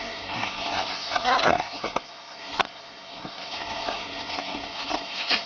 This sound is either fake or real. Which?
fake